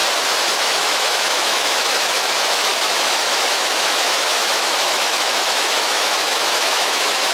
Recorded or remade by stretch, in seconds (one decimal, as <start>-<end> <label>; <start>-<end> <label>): 0.0-0.6 recorded; 0.6-7.3 remade

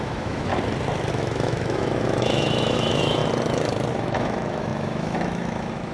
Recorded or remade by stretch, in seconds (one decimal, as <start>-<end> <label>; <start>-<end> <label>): 0.0-0.5 remade; 0.5-1.1 recorded; 1.1-3.2 remade; 3.2-3.9 recorded; 3.9-5.9 remade

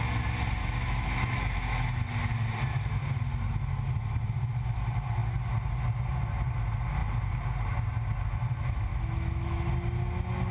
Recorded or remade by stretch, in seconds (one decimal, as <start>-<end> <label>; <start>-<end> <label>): 0.0-0.6 recorded; 0.6-1.9 remade; 1.9-8.9 recorded; 8.9-9.7 remade; 9.7-10.5 recorded